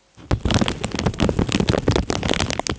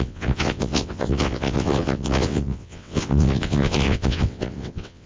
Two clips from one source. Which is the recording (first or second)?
first